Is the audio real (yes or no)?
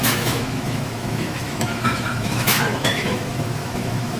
no